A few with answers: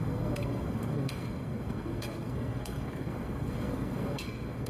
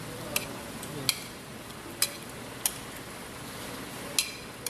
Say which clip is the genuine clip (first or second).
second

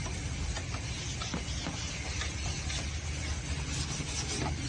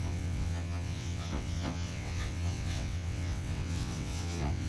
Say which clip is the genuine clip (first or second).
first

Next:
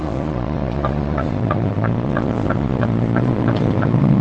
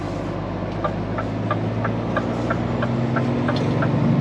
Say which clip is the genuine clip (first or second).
second